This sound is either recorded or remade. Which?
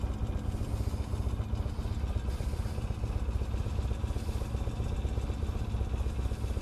recorded